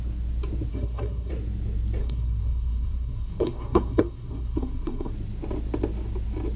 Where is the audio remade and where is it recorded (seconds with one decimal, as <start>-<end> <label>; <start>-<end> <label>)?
0.0-0.7 recorded; 0.7-1.3 remade; 1.3-2.0 recorded; 2.0-5.1 remade; 5.1-6.6 recorded